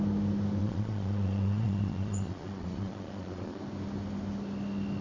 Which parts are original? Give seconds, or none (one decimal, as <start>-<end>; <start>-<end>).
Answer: 0.0-0.6; 3.6-5.0